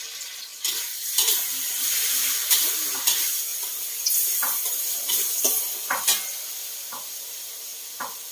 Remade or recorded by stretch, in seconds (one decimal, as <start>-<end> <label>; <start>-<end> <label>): 0.0-0.5 remade; 0.5-1.5 recorded; 1.5-8.3 remade